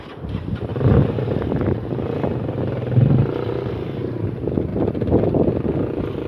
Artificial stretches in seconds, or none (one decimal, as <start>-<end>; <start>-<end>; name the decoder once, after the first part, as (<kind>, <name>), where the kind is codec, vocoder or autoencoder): 0.7-4.3 (vocoder, BigVGAN v2); 4.7-5.6